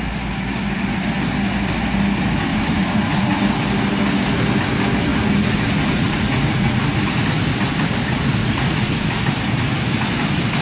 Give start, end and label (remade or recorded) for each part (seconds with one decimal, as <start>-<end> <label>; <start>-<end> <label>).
0.0-2.5 recorded; 2.5-3.4 remade; 3.4-5.1 recorded; 5.1-6.8 remade; 6.8-8.4 recorded; 8.4-9.2 remade; 9.2-10.6 recorded